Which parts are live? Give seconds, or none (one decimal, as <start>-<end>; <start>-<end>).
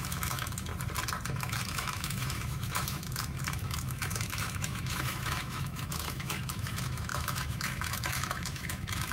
0.7-1.3